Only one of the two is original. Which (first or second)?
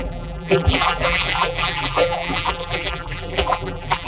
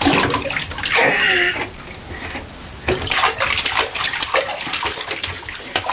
second